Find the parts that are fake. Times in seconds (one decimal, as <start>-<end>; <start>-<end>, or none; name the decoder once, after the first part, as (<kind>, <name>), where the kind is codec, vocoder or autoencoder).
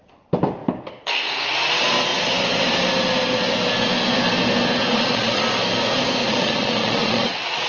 4.9-5.4 (vocoder, Vocos); 6.2-7.7